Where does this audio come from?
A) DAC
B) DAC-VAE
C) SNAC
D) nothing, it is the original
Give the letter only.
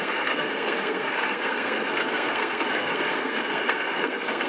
C